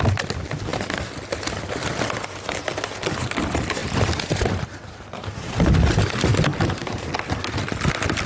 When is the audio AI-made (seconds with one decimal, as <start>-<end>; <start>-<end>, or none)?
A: 3.8-5.5; 6.5-7.1